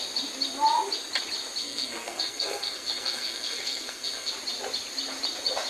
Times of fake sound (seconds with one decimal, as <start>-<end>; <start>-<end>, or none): 1.6-4.3

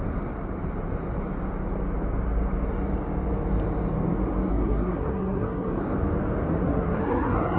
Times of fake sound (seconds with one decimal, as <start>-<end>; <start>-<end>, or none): 4.5-5.8; 6.6-7.6

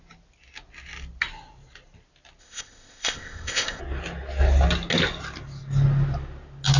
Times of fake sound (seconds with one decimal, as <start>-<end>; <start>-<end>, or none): 2.4-3.8

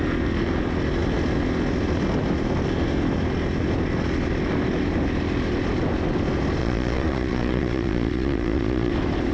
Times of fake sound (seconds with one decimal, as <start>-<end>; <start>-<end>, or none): 6.6-8.9

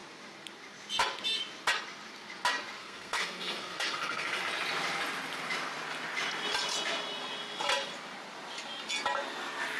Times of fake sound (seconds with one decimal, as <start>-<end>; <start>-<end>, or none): 2.8-4.4

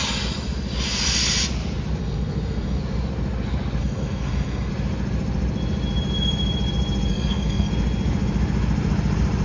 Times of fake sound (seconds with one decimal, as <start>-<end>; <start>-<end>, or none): 2.0-2.8; 3.8-4.7; 7.1-7.7

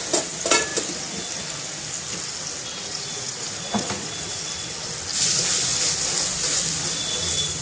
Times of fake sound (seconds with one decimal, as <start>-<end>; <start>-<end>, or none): 2.7-4.4